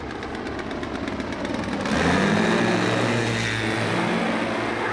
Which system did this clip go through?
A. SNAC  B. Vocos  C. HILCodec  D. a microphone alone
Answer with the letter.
D